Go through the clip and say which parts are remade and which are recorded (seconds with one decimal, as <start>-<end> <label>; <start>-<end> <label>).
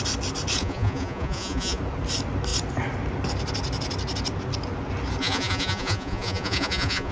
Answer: 0.0-0.6 recorded; 0.6-1.8 remade; 1.8-5.2 recorded; 5.2-7.1 remade